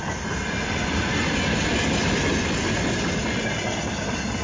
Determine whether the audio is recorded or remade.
recorded